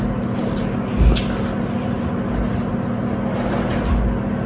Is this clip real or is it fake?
real